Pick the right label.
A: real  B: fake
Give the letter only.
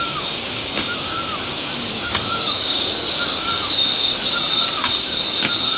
B